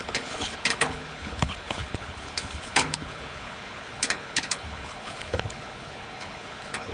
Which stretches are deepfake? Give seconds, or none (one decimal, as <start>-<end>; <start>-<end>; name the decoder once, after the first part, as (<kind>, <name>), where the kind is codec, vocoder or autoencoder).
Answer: 0.0-6.9 (codec, HILCodec)